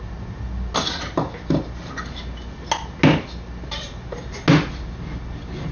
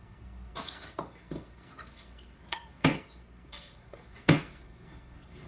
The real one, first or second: first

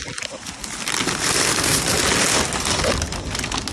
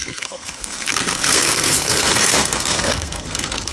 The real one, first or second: first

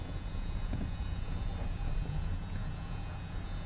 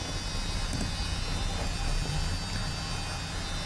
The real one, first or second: second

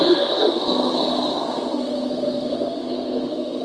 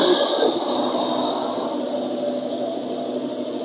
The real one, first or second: second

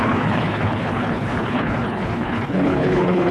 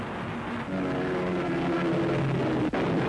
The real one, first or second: second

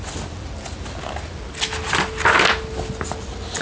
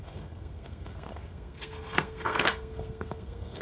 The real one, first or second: first